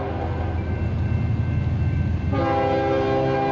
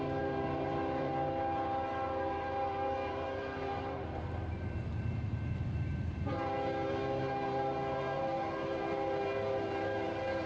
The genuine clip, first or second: first